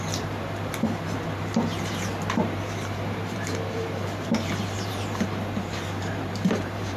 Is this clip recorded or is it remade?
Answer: remade